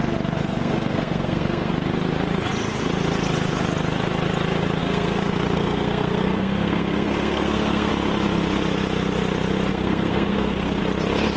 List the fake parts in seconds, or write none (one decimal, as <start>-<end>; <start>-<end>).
0.4-1.7; 4.8-7.9; 9.7-10.8